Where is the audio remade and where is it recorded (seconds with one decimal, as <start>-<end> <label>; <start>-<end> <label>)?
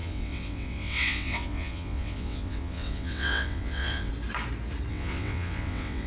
0.0-4.1 remade; 4.1-4.9 recorded; 4.9-6.1 remade